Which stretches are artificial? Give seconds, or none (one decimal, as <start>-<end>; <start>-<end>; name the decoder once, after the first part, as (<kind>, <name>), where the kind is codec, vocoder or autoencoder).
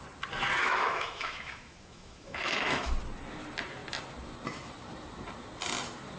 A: 0.6-2.9 (autoencoder, DAC-VAE)